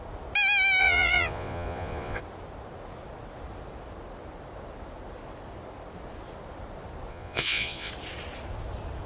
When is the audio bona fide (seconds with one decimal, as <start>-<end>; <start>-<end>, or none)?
0.0-0.8; 2.2-7.1; 7.9-9.1